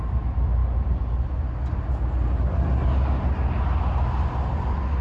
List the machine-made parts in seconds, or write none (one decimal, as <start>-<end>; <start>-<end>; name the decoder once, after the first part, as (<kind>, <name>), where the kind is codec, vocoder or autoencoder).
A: none